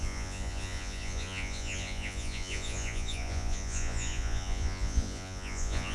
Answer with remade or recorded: remade